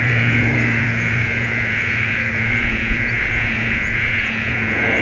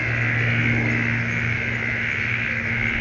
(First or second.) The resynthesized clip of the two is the first